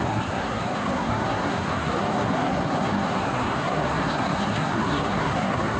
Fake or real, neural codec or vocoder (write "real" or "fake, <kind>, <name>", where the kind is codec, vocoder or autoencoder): fake, codec, SNAC